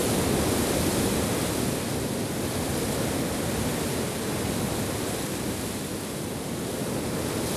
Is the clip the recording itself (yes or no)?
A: yes